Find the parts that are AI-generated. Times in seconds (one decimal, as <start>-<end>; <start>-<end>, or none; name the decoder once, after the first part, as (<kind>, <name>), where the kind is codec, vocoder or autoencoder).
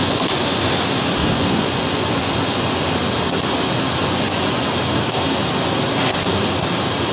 0.0-0.7 (vocoder, Vocos); 1.2-2.8; 4.0-4.7